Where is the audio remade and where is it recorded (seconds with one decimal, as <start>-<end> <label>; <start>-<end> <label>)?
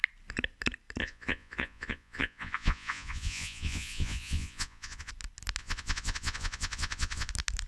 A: 0.0-1.0 recorded; 1.0-5.1 remade; 5.1-5.6 recorded; 5.6-7.3 remade; 7.3-7.7 recorded